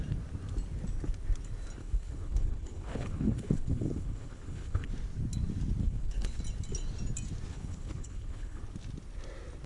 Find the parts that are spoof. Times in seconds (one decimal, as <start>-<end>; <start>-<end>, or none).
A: 1.8-4.9; 5.8-6.4; 7.5-8.6

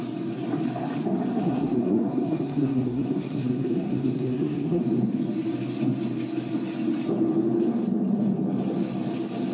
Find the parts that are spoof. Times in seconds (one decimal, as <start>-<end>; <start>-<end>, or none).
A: 1.4-4.8

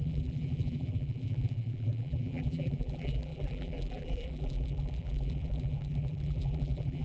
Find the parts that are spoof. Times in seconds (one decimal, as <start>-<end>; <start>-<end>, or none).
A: 0.0-7.0

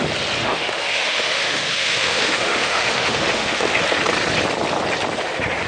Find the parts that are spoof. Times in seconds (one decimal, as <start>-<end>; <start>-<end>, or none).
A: 0.4-3.8

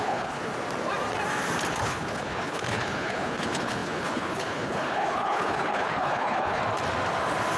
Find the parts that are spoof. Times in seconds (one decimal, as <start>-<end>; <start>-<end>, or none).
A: 0.0-0.5; 1.8-6.6

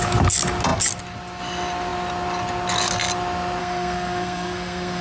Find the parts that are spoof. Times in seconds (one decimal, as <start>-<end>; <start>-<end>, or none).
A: 3.6-5.0

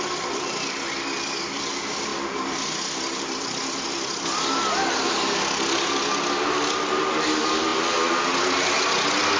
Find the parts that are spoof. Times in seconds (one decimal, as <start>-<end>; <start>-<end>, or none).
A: none

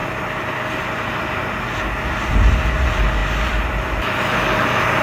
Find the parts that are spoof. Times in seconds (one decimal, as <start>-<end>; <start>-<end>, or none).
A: 0.0-1.3; 3.2-3.7